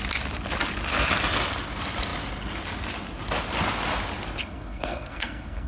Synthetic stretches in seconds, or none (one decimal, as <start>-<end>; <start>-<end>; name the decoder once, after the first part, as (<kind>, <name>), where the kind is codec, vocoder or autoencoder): 4.4-5.7 (codec, SNAC)